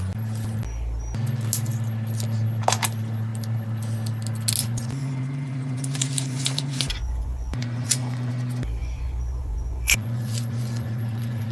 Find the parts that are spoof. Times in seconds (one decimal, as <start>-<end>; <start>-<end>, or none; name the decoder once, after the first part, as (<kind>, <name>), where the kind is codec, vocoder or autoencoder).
4.6-8.3 (vocoder, Vocos); 8.8-11.5